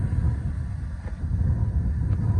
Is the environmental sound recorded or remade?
recorded